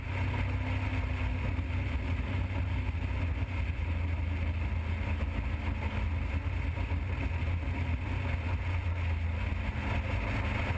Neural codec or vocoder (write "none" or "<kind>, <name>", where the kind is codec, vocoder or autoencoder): none